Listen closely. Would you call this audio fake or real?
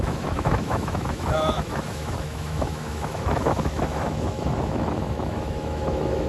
fake